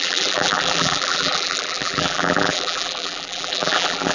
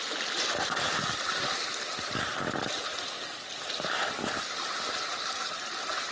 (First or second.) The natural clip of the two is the second